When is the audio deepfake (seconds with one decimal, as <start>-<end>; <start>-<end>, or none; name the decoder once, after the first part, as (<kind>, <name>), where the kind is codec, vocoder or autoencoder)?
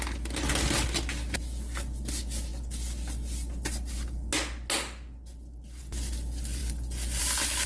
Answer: none